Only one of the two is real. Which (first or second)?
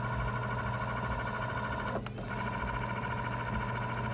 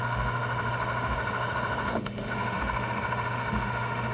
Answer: first